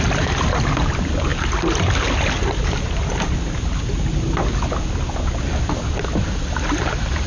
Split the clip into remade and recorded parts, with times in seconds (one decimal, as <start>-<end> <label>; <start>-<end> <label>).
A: 0.0-7.3 recorded